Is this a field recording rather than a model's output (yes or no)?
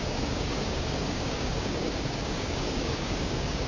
no